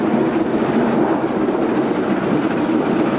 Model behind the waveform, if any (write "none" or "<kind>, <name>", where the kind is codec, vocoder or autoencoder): vocoder, BigVGAN v2